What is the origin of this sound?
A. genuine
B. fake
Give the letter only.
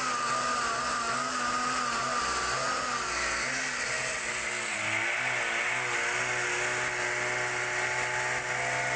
A